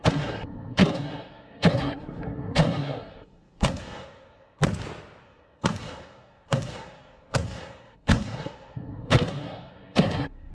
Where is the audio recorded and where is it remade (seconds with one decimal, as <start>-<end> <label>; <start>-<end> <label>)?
0.0-4.6 remade; 4.6-5.2 recorded; 5.2-10.5 remade